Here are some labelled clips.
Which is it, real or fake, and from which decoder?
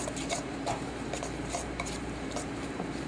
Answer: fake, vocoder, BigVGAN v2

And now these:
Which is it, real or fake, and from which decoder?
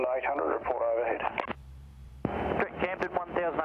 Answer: real